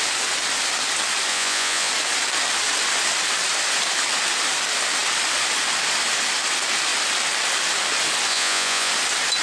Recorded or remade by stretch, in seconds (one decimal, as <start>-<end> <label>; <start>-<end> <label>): 0.0-1.3 recorded; 1.3-1.9 remade; 1.9-8.3 recorded; 8.3-8.9 remade; 8.9-9.4 recorded